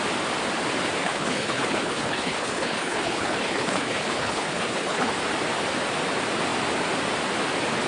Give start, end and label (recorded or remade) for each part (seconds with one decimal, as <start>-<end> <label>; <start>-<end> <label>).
0.0-1.0 recorded; 1.0-5.1 remade; 5.1-7.9 recorded